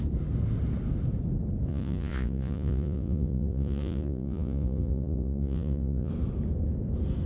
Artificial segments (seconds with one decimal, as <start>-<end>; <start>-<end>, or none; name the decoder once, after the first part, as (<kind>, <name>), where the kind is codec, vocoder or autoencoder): 1.7-6.1 (vocoder, Vocos)